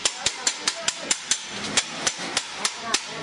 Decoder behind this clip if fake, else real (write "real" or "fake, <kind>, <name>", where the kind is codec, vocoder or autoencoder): real